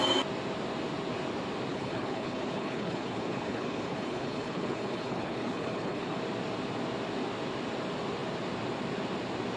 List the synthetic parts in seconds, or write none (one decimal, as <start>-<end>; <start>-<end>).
1.7-6.2